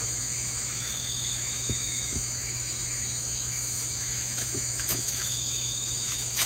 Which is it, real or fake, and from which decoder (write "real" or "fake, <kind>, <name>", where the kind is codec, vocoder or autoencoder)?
fake, autoencoder, DAC-VAE